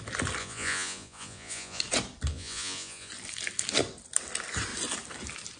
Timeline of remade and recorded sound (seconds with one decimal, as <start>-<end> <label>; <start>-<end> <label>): 0.0-0.4 recorded; 0.4-1.8 remade; 1.8-2.3 recorded; 2.3-3.1 remade; 3.1-5.6 recorded